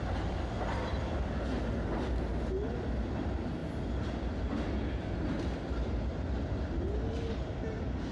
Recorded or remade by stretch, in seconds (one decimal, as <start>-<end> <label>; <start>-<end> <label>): 0.0-8.1 recorded